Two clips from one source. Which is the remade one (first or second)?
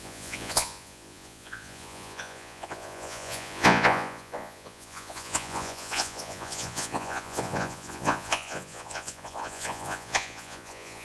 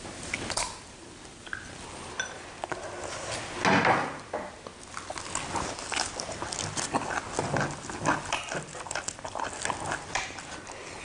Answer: first